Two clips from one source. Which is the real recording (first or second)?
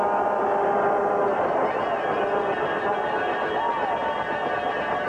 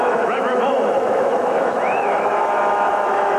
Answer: first